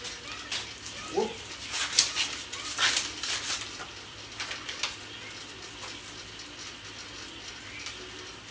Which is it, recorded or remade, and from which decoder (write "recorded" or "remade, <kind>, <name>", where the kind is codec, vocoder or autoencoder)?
recorded